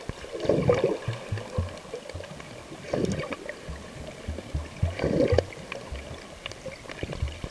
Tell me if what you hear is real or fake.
real